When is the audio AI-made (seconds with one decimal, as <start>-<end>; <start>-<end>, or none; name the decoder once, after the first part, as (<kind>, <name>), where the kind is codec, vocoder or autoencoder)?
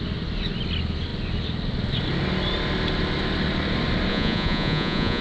4.1-5.2 (vocoder, Vocos)